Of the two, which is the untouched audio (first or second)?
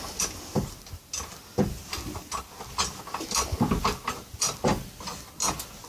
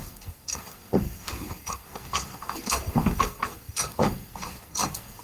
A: first